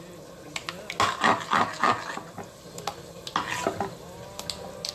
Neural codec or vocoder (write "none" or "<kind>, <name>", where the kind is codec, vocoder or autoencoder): none